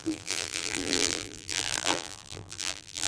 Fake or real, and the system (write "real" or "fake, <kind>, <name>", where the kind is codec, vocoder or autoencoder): fake, vocoder, BigVGAN v2